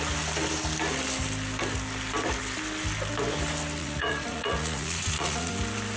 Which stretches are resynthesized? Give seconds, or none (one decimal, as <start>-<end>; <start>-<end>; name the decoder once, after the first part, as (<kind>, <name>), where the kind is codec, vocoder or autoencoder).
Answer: 3.8-5.5 (vocoder, Vocos)